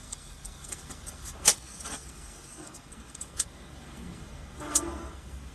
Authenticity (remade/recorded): remade